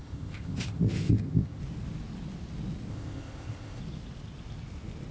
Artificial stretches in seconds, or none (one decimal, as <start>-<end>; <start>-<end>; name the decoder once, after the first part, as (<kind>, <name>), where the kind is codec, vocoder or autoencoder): 0.0-1.6 (codec, ZipCodec); 2.9-3.8